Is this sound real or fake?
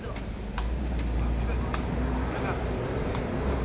real